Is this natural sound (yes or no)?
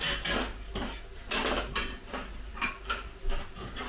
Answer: yes